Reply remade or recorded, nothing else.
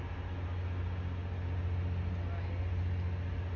recorded